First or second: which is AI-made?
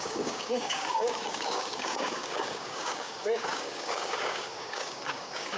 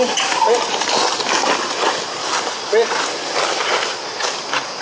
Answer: first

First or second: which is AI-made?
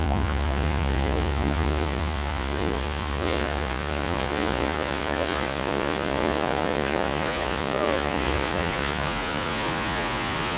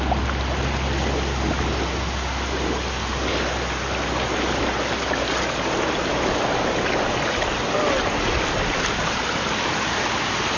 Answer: first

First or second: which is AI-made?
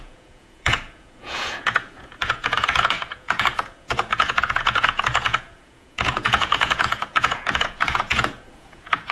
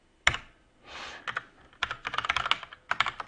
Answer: first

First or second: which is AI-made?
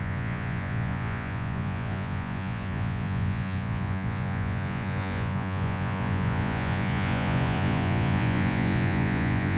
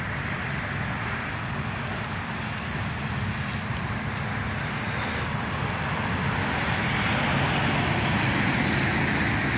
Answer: first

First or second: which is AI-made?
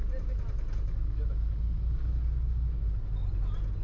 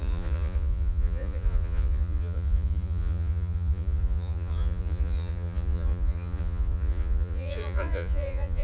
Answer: second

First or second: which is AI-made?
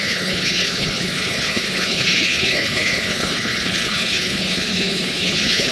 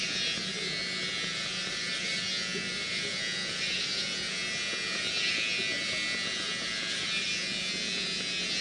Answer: first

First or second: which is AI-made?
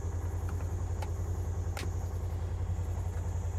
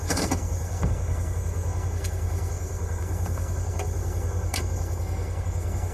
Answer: second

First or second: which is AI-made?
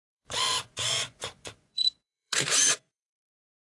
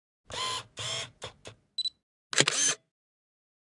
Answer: first